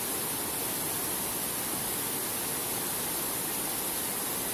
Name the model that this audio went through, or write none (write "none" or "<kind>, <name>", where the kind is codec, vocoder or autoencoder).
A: none